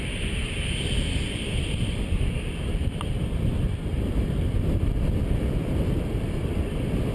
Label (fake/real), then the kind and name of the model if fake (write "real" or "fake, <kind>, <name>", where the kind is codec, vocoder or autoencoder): fake, vocoder, BigVGAN v2